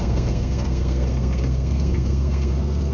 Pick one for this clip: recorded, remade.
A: remade